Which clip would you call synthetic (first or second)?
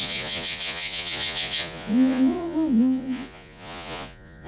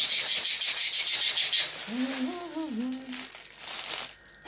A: first